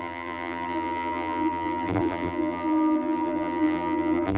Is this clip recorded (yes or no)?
no